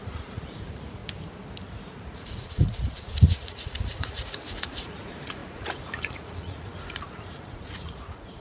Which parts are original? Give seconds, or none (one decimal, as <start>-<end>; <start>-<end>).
1.0-1.7